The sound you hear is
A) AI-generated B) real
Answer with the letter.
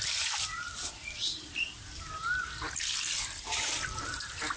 B